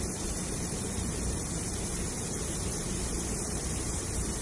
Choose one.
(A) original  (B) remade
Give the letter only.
B